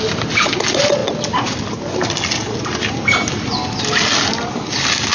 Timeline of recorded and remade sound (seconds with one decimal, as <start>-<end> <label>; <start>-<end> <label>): 0.0-5.1 recorded